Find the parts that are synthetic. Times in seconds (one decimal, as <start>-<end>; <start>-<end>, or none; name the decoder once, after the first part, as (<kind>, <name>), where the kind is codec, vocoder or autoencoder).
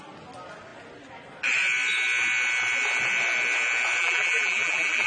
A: 4.0-5.1 (vocoder, BigVGAN v2)